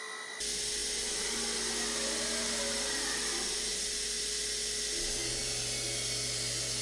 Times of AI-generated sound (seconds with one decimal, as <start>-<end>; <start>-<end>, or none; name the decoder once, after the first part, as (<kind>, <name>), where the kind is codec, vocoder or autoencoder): none